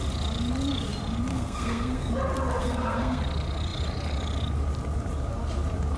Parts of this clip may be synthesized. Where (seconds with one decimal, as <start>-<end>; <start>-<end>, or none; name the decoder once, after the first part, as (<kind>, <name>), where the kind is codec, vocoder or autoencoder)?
1.3-2.1 (codec, SNAC); 2.6-3.2